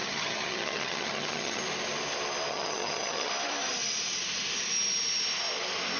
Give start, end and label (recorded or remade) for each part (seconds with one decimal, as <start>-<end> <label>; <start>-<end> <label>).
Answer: 0.0-1.6 remade; 1.6-2.5 recorded; 2.5-3.3 remade; 3.3-6.0 recorded